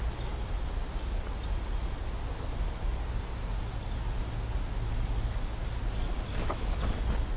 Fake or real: real